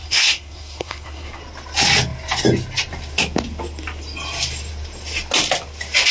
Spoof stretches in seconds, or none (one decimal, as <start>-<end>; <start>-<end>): 0.0-1.4